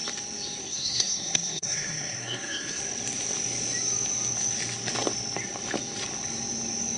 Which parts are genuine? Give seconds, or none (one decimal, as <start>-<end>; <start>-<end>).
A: 0.0-0.6; 2.8-7.0